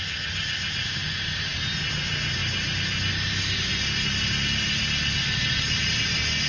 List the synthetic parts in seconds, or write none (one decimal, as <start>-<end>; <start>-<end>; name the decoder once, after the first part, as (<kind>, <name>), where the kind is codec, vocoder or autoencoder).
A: 3.7-5.9 (vocoder, BigVGAN v2)